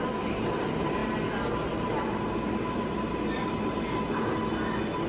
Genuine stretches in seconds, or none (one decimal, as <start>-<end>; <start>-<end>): 0.0-5.1